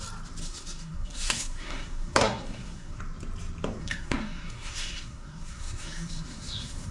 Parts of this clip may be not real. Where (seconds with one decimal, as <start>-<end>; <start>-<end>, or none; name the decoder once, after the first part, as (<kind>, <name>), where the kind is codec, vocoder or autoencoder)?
0.4-3.0 (codec, SNAC); 3.8-6.9